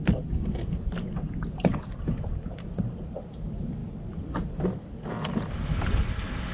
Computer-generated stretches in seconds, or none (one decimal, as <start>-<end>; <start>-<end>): none